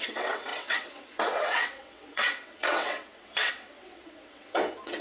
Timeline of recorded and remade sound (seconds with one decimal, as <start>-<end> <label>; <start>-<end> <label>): 0.0-5.0 remade